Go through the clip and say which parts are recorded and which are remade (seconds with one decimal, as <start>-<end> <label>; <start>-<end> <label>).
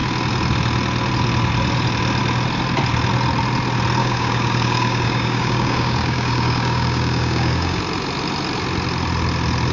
0.0-4.0 recorded; 4.0-7.8 remade; 7.8-9.7 recorded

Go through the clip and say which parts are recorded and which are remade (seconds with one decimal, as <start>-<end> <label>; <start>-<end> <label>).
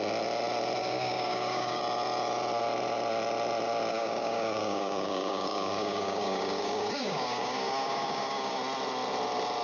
0.0-0.8 recorded; 0.8-1.8 remade; 1.8-3.9 recorded; 3.9-8.6 remade; 8.6-9.6 recorded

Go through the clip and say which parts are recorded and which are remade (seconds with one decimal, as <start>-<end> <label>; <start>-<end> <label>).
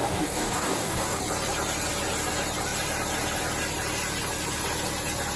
0.0-1.2 remade; 1.2-5.4 recorded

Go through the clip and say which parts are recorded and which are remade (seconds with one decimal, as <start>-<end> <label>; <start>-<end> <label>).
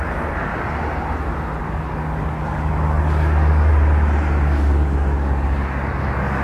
0.0-0.5 remade; 0.5-1.6 recorded; 1.6-3.7 remade; 3.7-4.3 recorded; 4.3-6.4 remade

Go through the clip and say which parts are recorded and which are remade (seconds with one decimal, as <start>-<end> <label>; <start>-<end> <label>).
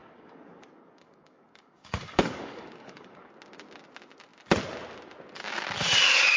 0.0-3.3 remade; 3.3-6.4 recorded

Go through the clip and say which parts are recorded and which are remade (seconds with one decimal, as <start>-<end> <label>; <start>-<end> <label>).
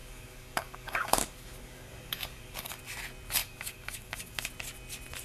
0.0-2.8 remade; 2.8-3.4 recorded; 3.4-4.5 remade; 4.5-5.2 recorded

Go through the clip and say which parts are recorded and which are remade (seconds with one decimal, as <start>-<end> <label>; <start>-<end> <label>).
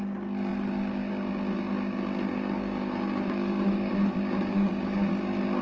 0.0-2.3 recorded; 2.3-3.9 remade; 3.9-4.5 recorded; 4.5-5.1 remade; 5.1-5.6 recorded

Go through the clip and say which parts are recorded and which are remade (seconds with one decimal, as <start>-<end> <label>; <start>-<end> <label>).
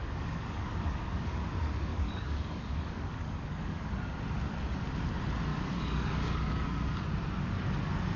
0.0-1.5 remade; 1.5-1.9 recorded; 1.9-3.9 remade; 3.9-5.5 recorded; 5.5-7.1 remade; 7.1-8.2 recorded